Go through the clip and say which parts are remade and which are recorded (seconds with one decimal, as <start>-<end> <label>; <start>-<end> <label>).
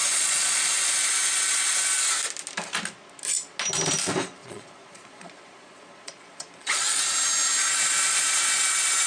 0.0-0.6 remade; 0.6-4.4 recorded; 4.4-7.0 remade; 7.0-9.1 recorded